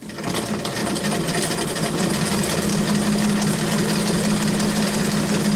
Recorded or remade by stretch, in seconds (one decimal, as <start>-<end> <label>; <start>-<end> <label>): 0.0-0.8 recorded; 0.8-2.0 remade; 2.0-5.6 recorded